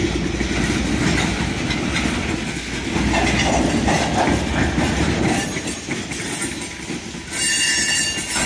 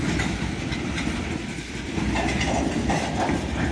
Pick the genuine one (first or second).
first